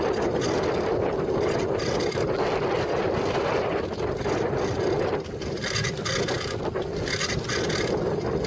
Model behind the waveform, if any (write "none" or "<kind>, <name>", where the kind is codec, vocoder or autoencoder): none